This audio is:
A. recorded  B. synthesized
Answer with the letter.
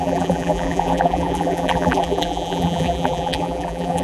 B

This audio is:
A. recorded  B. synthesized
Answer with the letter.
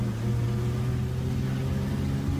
A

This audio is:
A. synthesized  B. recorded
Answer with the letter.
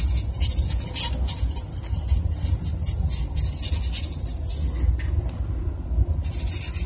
B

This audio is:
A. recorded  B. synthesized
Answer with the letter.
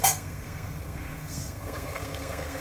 B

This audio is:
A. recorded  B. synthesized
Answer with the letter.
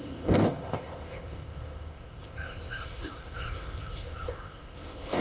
B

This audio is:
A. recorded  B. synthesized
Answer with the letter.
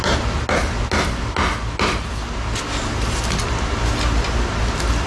A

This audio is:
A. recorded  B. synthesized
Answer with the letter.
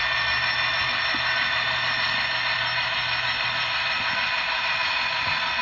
A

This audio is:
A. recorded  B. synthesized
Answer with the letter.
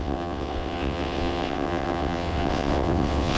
B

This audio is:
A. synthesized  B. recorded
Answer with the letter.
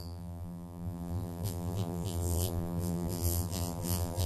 A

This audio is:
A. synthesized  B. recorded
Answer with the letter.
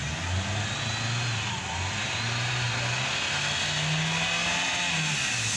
B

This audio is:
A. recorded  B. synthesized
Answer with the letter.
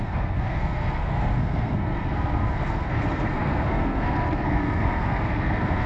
B